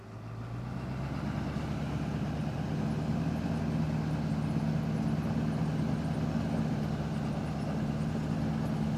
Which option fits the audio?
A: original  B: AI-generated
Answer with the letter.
A